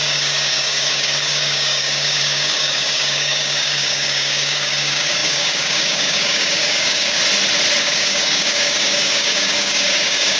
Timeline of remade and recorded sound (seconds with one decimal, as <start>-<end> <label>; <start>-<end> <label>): 0.0-7.2 remade; 7.2-7.8 recorded; 7.8-10.4 remade